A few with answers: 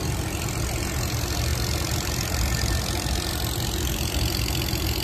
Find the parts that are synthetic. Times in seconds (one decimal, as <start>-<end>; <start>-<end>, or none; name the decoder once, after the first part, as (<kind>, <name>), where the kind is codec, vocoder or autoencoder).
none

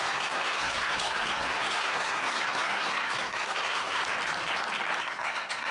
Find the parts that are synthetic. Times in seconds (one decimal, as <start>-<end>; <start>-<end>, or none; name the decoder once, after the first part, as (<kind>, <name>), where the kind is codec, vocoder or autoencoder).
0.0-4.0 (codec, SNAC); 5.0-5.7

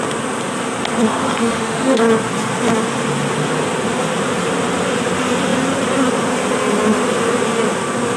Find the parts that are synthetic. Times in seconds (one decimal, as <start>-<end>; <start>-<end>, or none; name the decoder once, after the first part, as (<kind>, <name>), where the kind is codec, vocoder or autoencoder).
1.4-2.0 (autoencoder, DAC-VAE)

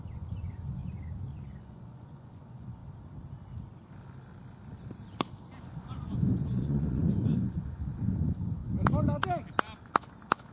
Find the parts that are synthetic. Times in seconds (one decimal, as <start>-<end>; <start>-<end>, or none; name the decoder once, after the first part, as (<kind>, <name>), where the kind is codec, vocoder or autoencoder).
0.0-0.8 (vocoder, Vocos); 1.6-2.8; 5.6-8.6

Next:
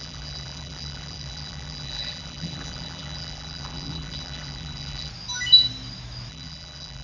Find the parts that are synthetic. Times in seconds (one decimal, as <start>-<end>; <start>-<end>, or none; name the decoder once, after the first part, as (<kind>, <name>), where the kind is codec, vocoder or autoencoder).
0.0-5.1 (vocoder, BigVGAN v2); 6.3-7.0

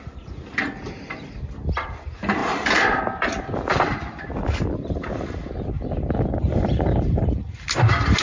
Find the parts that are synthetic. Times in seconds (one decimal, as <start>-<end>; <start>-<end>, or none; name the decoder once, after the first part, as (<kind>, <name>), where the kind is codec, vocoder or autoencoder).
2.4-3.0 (vocoder, BigVGAN v2); 6.5-8.2

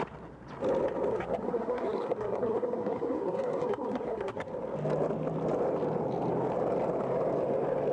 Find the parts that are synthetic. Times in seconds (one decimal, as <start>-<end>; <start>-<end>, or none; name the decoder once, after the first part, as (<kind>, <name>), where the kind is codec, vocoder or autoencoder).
1.1-4.5 (codec, SNAC)

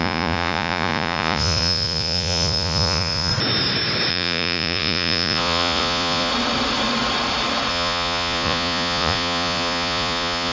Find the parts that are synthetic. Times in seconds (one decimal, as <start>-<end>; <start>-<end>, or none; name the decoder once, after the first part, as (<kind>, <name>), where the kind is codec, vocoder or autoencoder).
0.0-3.3 (vocoder, Vocos); 4.1-6.3; 7.7-10.5